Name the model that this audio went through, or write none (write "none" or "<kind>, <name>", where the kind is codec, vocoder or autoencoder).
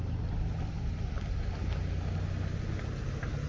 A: none